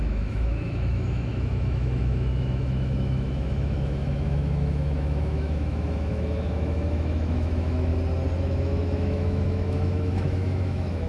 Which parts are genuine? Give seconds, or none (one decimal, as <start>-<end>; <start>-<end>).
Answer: 7.9-8.4